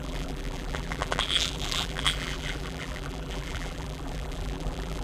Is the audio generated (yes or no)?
yes